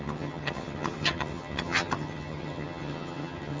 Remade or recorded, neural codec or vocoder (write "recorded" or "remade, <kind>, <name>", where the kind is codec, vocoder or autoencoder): remade, vocoder, HiFi-GAN